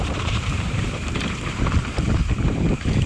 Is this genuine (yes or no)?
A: no